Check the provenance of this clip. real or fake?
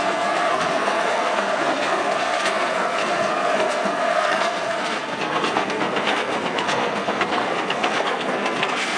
fake